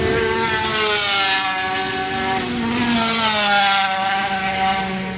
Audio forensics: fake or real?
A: real